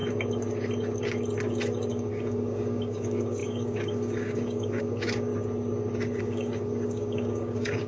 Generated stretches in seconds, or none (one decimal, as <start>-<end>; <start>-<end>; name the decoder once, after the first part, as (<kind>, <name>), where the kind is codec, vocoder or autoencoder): 1.9-5.3 (codec, DAC); 6.2-7.9